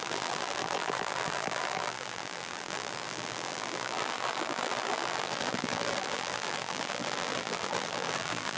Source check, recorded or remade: remade